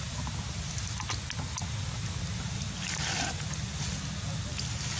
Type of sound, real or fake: real